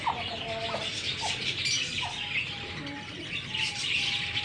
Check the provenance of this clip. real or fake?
real